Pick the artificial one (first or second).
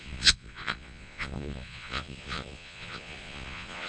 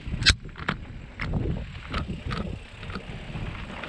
first